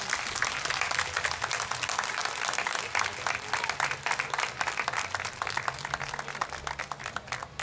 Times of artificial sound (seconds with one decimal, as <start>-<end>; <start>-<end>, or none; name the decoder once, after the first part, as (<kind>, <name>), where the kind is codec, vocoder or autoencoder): none